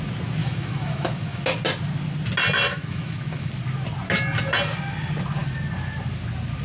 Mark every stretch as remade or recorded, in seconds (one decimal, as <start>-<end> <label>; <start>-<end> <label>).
0.0-0.4 recorded; 0.4-1.4 remade; 1.4-2.7 recorded; 2.7-3.5 remade; 3.5-6.6 recorded